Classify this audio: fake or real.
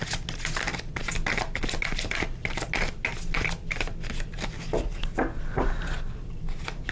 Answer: real